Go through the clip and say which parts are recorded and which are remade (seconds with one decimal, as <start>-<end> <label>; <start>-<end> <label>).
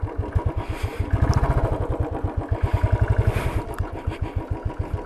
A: 0.0-5.1 recorded